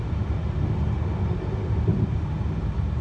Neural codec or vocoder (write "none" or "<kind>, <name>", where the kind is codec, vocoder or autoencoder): none